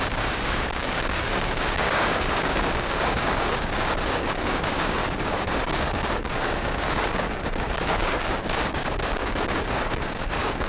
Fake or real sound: fake